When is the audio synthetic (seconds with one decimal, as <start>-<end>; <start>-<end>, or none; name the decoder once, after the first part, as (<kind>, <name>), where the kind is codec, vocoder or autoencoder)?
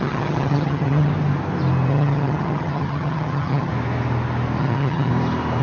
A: 0.0-1.1 (vocoder, HiFi-GAN); 1.9-3.7; 4.6-5.1